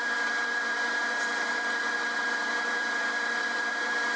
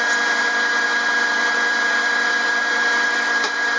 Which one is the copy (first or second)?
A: first